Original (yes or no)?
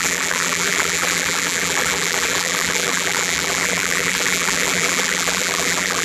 no